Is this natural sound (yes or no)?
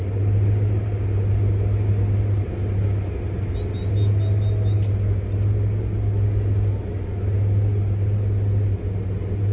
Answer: yes